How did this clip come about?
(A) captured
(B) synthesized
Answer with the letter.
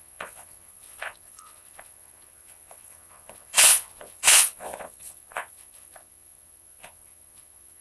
B